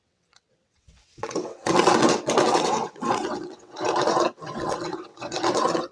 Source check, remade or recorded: remade